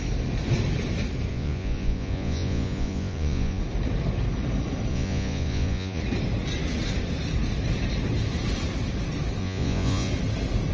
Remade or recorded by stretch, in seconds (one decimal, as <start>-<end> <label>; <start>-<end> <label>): 0.0-1.3 recorded; 1.3-3.6 remade; 3.6-4.9 recorded; 4.9-6.0 remade; 6.0-9.4 recorded; 9.4-10.1 remade; 10.1-10.7 recorded